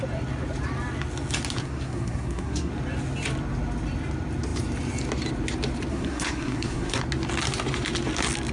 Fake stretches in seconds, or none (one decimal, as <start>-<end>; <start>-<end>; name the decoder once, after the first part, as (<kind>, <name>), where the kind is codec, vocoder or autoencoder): 1.6-2.7 (codec, SNAC); 5.9-7.0